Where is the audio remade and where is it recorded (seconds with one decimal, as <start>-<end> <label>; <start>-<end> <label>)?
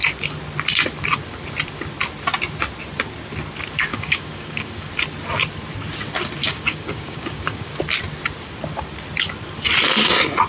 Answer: 0.0-3.9 recorded; 3.9-4.9 remade; 4.9-6.4 recorded; 6.4-7.7 remade; 7.7-10.5 recorded